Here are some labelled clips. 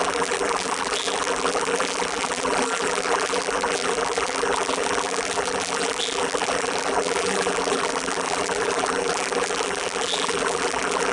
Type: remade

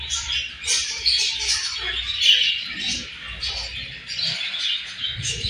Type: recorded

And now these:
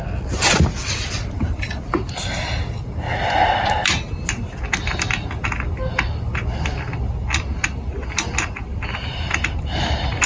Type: recorded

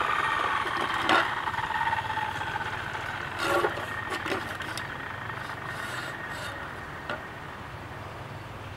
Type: remade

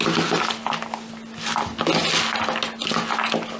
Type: recorded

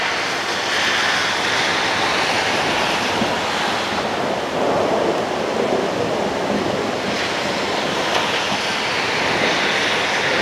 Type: recorded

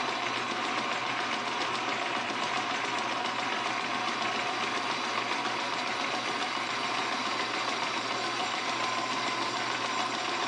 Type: recorded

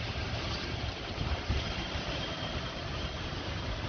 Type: remade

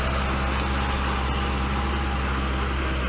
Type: recorded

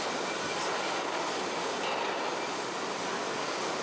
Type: recorded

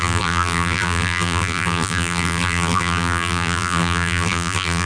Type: remade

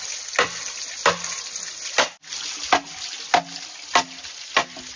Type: recorded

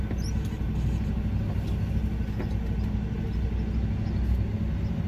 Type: recorded